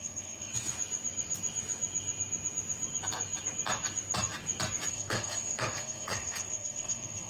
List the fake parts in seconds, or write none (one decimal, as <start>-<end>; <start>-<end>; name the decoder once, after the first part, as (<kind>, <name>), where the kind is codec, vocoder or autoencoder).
0.0-0.5 (codec, SNAC); 4.9-7.3